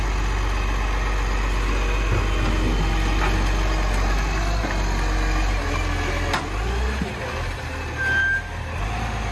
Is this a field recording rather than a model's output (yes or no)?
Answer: yes